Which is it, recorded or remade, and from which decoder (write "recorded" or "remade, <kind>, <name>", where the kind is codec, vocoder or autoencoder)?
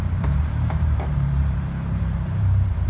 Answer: remade, vocoder, BigVGAN v2